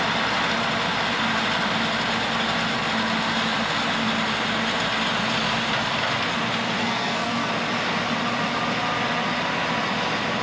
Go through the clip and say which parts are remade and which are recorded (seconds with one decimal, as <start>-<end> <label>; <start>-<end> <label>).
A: 0.0-6.8 recorded; 6.8-7.5 remade; 7.5-10.4 recorded